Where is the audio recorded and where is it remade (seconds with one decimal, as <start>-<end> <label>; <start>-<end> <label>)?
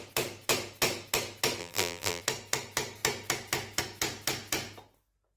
0.0-1.6 recorded; 1.6-2.2 remade; 2.2-5.4 recorded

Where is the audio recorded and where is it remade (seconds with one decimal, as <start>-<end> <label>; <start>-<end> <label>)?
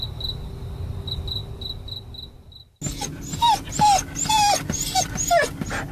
0.0-5.9 recorded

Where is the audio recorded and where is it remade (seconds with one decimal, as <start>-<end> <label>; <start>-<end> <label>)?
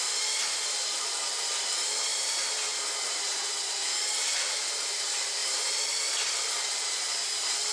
0.0-2.1 recorded; 2.1-2.8 remade; 2.8-5.4 recorded; 5.4-6.5 remade; 6.5-7.7 recorded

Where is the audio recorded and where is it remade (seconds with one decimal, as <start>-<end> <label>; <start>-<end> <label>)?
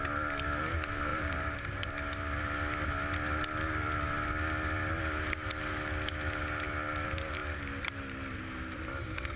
0.0-1.1 recorded; 1.1-1.9 remade; 1.9-9.4 recorded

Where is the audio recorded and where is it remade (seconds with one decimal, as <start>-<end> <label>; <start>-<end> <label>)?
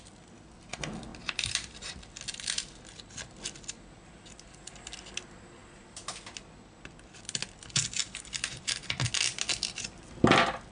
0.0-1.1 recorded; 1.1-2.1 remade; 2.1-8.0 recorded; 8.0-8.9 remade; 8.9-10.7 recorded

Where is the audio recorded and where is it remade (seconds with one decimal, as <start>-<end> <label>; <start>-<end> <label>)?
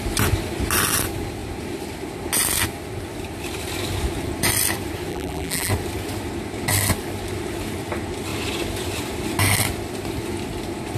0.0-5.1 recorded; 5.1-5.7 remade; 5.7-11.0 recorded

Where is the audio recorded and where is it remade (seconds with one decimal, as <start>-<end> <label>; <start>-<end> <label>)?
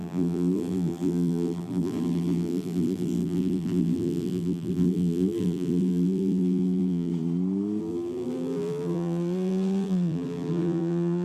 0.0-7.1 remade; 7.1-7.8 recorded; 7.8-11.2 remade